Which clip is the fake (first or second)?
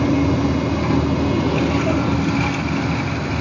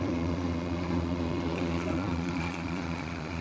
second